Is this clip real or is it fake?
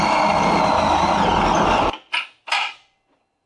real